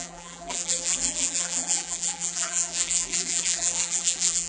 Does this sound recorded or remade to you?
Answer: remade